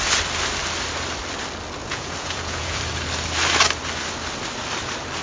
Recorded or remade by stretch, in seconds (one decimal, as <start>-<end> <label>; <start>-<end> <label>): 0.0-1.8 recorded; 1.8-2.8 remade; 2.8-5.2 recorded